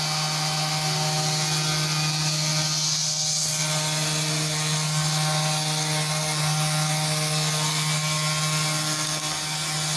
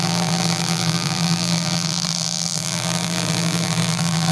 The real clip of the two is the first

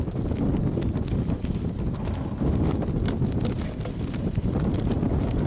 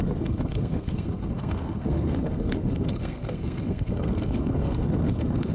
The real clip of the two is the first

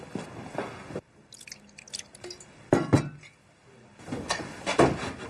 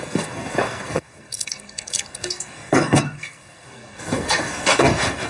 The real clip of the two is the first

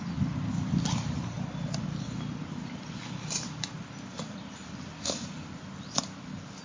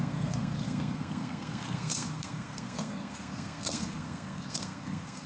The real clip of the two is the first